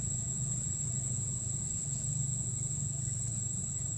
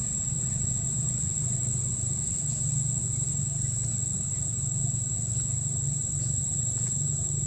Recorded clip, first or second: second